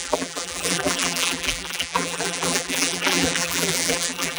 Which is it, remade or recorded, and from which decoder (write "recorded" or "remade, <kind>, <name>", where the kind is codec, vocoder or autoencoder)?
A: remade, vocoder, BigVGAN v2